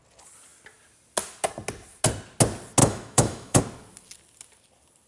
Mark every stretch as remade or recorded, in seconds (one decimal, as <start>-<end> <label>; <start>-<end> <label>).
0.0-2.8 recorded; 2.8-3.6 remade; 3.6-5.1 recorded